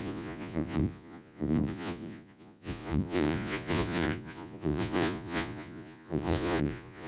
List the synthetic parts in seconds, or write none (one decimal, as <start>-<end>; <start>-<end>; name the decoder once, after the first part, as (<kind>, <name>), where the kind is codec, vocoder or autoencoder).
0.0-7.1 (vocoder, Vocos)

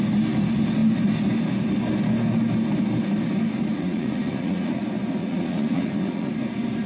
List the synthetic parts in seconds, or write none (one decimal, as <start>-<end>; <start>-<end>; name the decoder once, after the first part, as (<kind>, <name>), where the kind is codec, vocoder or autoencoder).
3.7-4.8 (vocoder, Vocos); 5.2-6.3

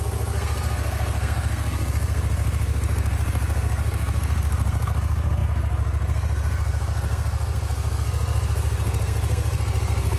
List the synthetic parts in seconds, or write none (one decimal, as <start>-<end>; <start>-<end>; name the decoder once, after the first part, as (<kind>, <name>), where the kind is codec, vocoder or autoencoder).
0.0-10.2 (codec, SNAC)

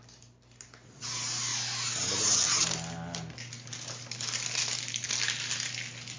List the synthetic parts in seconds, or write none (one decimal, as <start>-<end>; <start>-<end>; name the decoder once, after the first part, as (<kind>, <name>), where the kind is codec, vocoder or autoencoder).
none

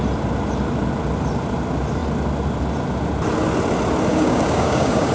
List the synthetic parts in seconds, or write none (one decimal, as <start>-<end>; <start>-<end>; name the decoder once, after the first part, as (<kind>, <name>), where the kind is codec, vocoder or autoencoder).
4.1-5.1 (codec, DAC)

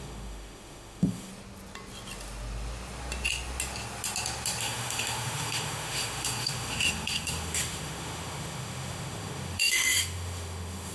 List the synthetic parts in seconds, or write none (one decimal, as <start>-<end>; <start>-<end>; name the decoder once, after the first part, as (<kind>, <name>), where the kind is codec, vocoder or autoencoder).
0.0-1.3 (autoencoder, DAC-VAE); 4.6-10.9

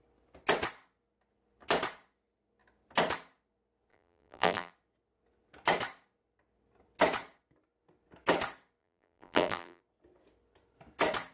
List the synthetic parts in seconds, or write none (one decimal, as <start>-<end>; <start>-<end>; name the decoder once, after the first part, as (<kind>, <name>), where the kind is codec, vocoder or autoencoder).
3.9-4.7 (vocoder, BigVGAN v2); 8.8-9.8

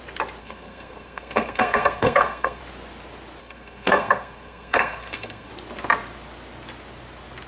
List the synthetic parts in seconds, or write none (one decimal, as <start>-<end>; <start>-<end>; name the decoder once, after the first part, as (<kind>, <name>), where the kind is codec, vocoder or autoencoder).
0.4-2.6 (codec, SNAC); 3.4-5.5